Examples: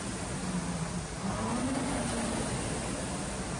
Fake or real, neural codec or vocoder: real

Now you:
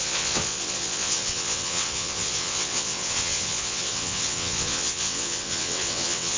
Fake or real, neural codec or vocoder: fake, vocoder, WaveNeXt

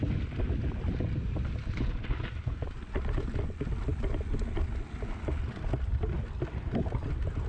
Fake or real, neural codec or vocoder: real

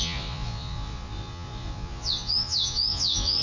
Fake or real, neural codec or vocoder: fake, vocoder, Vocos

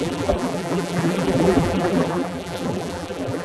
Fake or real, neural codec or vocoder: fake, vocoder, BigVGAN v2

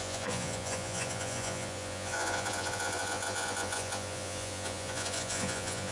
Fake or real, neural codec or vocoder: fake, vocoder, Vocos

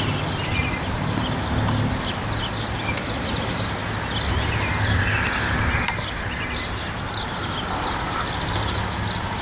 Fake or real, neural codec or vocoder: real